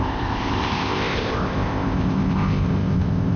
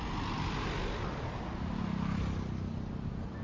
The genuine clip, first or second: second